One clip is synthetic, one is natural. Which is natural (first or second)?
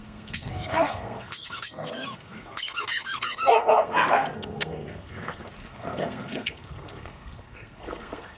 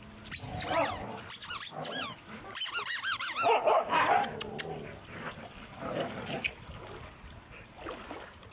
second